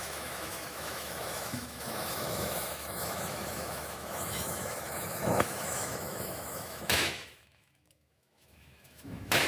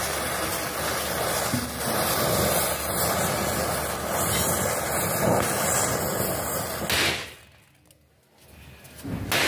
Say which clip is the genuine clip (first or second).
second